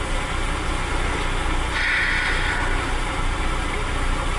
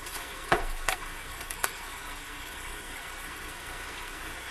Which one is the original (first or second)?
first